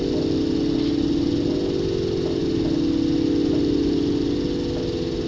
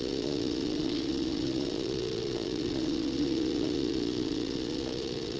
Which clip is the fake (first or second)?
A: second